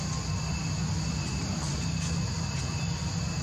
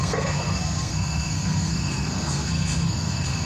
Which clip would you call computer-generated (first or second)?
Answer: second